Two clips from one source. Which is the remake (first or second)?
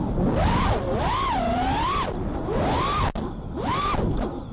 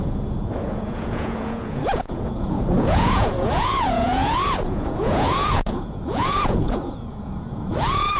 second